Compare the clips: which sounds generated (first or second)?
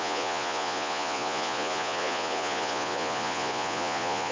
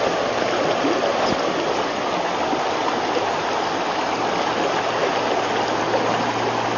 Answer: first